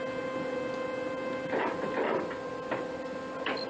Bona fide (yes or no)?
yes